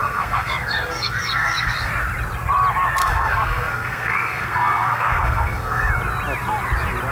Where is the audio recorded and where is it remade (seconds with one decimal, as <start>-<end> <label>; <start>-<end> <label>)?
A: 0.0-1.9 remade; 1.9-3.0 recorded; 3.0-5.9 remade; 5.9-7.1 recorded